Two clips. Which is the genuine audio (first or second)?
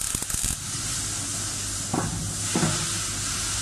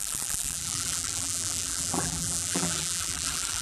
first